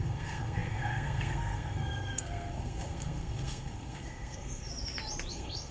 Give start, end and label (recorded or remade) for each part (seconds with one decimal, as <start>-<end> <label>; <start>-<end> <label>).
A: 0.0-4.7 remade; 4.7-5.3 recorded; 5.3-5.7 remade